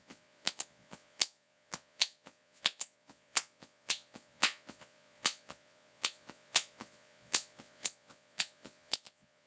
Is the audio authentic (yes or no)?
no